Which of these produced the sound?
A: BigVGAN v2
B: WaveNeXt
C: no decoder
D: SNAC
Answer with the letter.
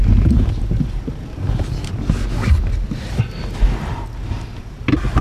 C